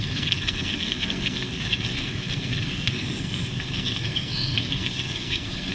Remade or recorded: remade